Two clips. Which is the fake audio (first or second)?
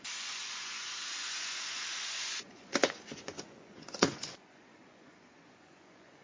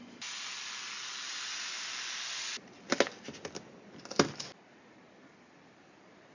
first